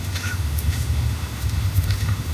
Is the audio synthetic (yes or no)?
yes